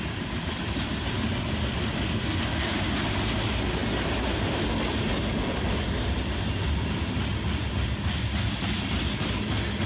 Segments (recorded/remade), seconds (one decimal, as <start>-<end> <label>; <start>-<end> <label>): 0.0-9.9 recorded